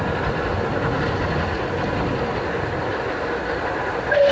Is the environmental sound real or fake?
real